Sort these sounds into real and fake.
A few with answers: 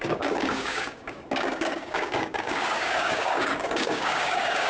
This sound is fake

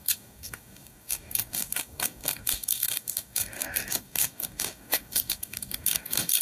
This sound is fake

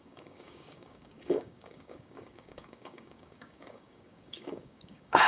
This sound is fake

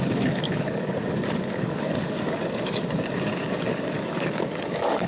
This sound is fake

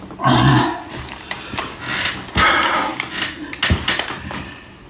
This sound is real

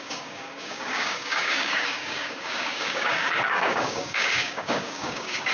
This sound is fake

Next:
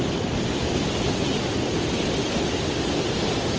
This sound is real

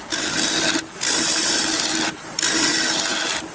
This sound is real